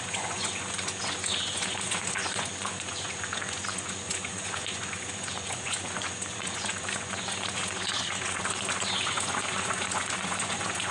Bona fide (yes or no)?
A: no